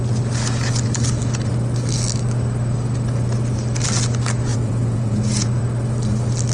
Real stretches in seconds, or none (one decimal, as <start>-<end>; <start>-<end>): 0.0-4.5; 5.6-6.5